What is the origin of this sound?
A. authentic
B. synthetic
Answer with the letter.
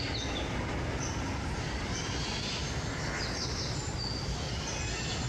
A